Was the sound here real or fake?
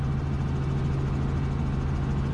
real